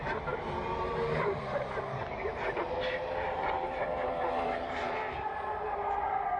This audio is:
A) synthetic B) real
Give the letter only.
A